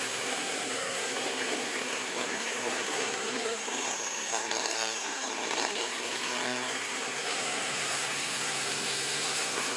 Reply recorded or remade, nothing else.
remade